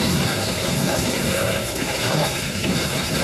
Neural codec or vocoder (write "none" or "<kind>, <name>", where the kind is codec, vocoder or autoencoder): codec, SNAC